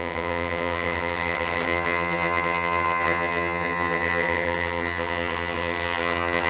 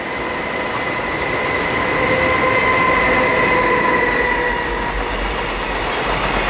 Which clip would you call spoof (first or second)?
first